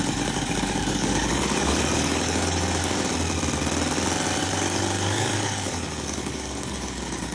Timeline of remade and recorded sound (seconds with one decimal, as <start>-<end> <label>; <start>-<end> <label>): 0.0-3.1 remade; 3.1-4.4 recorded; 4.4-7.3 remade